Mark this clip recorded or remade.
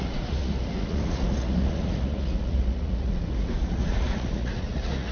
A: remade